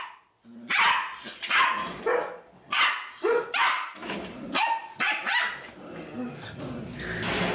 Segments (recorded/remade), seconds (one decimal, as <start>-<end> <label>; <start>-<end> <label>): 0.0-4.0 recorded; 4.0-5.0 remade; 5.0-7.5 recorded